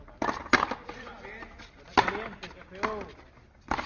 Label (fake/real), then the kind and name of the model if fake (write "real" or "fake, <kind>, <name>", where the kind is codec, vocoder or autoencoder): real